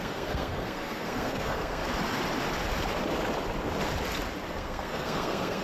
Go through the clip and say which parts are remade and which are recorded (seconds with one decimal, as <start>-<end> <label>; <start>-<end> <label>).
0.0-1.8 remade; 1.8-4.5 recorded; 4.5-5.6 remade